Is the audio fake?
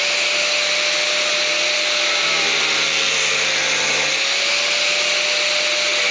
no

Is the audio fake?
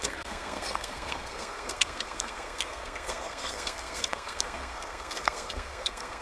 yes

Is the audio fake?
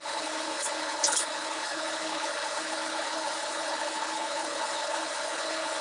yes